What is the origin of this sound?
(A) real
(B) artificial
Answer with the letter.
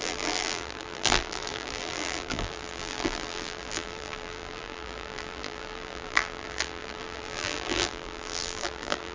B